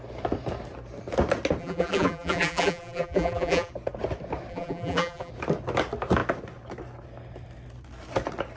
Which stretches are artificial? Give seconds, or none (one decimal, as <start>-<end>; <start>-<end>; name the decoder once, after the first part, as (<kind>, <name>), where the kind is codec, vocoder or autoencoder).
1.6-3.7 (vocoder, BigVGAN v2); 4.5-5.3